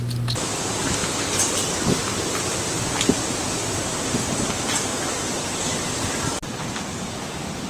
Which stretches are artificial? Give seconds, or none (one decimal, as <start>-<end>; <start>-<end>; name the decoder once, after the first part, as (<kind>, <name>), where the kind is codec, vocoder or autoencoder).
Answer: none